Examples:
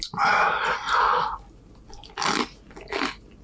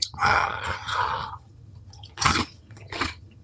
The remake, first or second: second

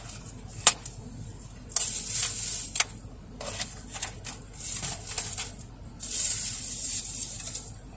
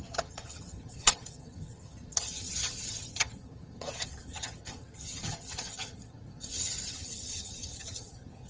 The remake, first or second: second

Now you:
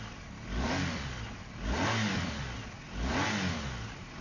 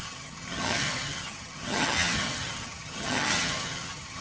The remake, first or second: second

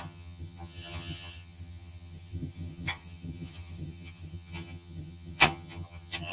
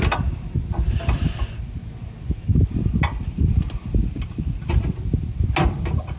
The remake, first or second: first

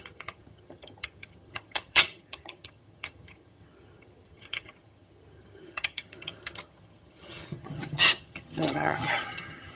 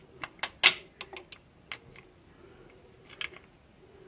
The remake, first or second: first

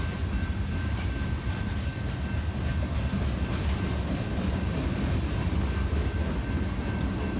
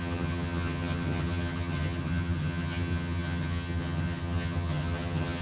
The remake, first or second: second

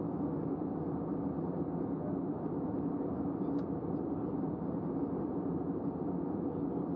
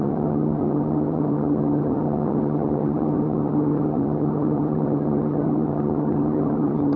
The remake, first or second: second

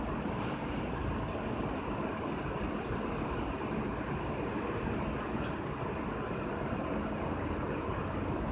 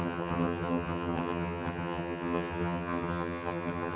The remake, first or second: second